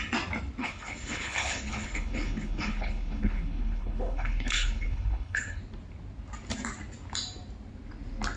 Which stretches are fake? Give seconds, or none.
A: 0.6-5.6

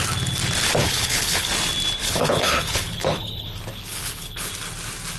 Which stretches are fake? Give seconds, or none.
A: 0.8-1.5; 2.0-4.5

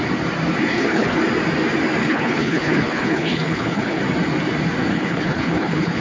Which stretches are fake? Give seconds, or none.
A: 0.7-1.2; 2.0-4.0; 4.9-6.0

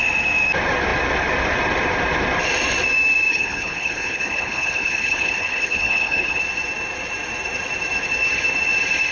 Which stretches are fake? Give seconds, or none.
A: 3.3-6.4

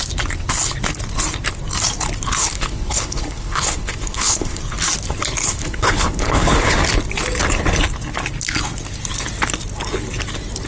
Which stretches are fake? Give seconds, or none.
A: 2.4-4.6; 5.4-6.8

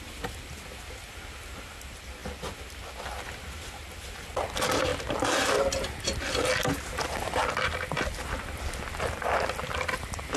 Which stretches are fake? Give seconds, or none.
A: none